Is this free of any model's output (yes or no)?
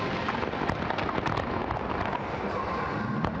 yes